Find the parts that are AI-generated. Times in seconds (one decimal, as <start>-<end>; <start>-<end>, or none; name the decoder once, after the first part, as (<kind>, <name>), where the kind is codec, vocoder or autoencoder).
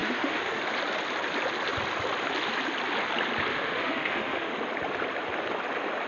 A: 0.0-0.6 (autoencoder, DAC-VAE); 3.5-4.5